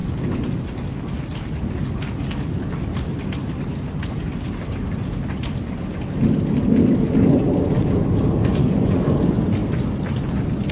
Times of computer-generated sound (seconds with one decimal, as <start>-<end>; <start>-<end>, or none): 8.4-9.0